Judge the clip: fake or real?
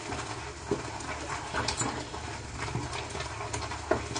real